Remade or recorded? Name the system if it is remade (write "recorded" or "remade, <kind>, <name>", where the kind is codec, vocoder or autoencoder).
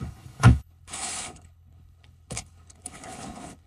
remade, codec, HILCodec